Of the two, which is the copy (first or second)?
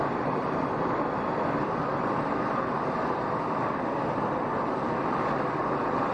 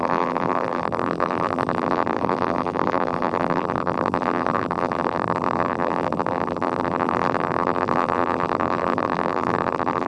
second